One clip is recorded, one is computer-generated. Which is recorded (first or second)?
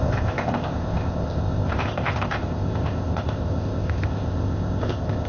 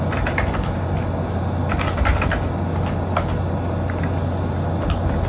second